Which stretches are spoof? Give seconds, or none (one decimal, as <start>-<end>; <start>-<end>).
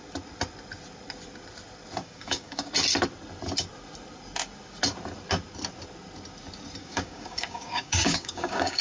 2.0-2.7; 6.8-8.8